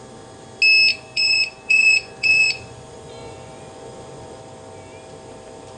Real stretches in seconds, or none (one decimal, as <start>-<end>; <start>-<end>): 0.0-0.9; 4.4-5.8